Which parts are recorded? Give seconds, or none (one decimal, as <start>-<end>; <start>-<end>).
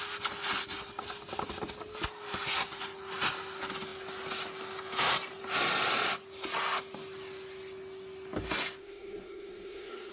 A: 0.0-8.8